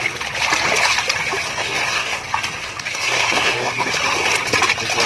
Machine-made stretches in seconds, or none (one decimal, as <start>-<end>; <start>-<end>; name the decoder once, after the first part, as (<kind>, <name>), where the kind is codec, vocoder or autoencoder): 1.5-2.2 (codec, SNAC); 2.6-3.9